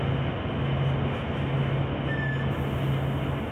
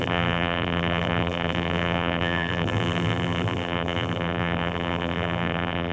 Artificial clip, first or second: second